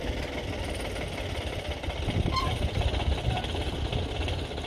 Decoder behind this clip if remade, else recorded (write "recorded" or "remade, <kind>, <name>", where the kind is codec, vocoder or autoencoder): recorded